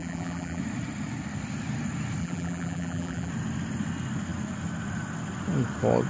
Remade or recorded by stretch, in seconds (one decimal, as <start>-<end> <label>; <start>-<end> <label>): 0.0-0.6 remade; 0.6-2.2 recorded; 2.2-3.3 remade; 3.3-6.1 recorded